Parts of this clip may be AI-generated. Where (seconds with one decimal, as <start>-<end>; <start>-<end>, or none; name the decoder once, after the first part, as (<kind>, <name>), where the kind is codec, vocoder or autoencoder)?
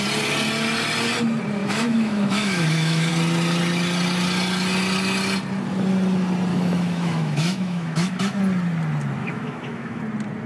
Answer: 1.6-3.1 (autoencoder, DAC-VAE); 6.5-8.4; 9.2-10.0